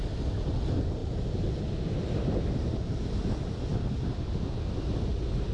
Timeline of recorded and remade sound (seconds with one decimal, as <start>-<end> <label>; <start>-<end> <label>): 0.0-5.5 recorded